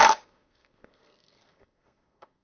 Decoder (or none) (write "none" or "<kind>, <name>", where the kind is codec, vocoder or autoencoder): codec, SNAC